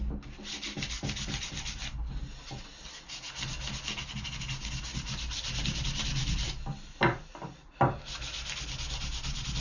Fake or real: real